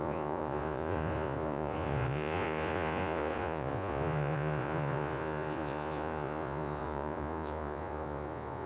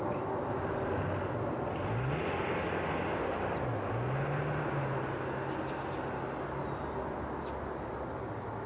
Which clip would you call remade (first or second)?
first